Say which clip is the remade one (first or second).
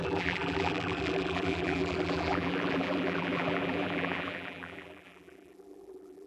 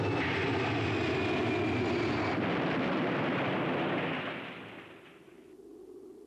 first